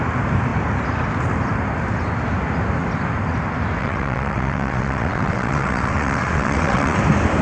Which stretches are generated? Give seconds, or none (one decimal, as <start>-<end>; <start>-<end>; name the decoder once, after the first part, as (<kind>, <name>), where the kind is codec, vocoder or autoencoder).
3.8-7.0 (vocoder, WaveNeXt)